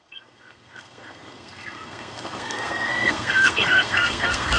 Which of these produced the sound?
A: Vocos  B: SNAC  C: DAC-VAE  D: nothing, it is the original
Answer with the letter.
B